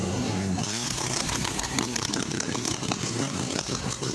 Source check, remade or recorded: remade